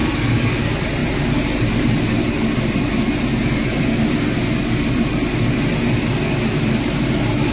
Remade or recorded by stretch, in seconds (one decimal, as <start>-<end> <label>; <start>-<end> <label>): 0.0-7.5 recorded